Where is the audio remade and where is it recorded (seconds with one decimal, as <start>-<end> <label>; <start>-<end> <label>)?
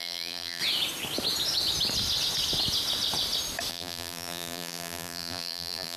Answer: 0.0-0.6 remade; 0.6-3.7 recorded; 3.7-6.0 remade